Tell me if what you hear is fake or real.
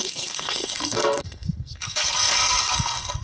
fake